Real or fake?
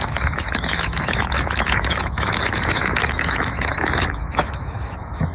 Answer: fake